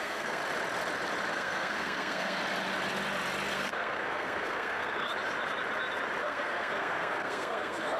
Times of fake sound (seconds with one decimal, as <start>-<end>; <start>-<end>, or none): 0.0-0.4; 1.3-2.4; 3.5-5.1; 6.2-8.0